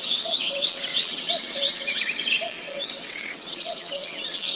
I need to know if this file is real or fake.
fake